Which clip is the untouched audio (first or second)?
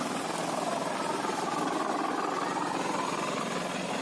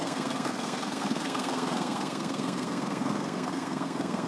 first